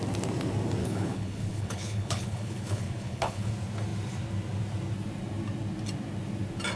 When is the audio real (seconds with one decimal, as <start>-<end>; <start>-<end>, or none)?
0.0-0.8; 3.5-6.8